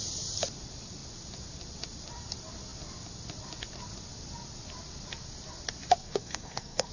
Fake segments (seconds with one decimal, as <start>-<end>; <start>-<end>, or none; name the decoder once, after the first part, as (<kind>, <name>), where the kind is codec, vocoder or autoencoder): 6.0-6.9 (codec, SNAC)